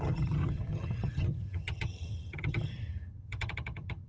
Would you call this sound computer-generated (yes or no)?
yes